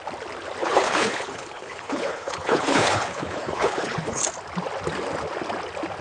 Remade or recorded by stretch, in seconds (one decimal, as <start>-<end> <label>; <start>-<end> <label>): 0.0-0.6 recorded; 0.6-4.2 remade; 4.2-6.0 recorded